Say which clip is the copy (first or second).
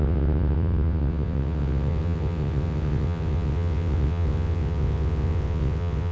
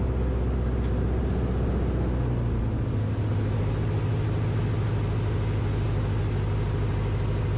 first